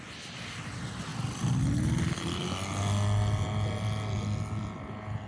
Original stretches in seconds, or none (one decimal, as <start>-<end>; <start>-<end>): 0.0-5.3